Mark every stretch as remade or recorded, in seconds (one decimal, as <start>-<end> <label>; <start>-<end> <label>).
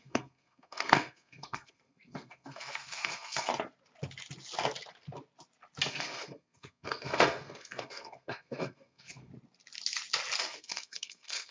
0.0-3.5 remade; 3.5-5.9 recorded; 5.9-9.3 remade; 9.3-10.4 recorded; 10.4-11.5 remade